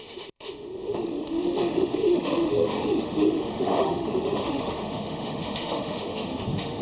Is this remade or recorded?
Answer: remade